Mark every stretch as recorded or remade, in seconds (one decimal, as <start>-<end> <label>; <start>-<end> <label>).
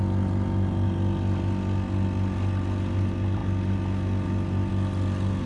0.0-5.5 recorded